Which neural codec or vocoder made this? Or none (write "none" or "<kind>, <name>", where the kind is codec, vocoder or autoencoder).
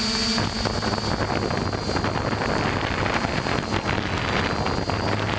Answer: none